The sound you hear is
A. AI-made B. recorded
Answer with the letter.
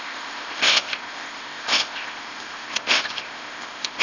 A